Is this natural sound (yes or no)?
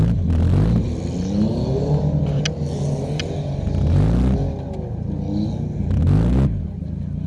yes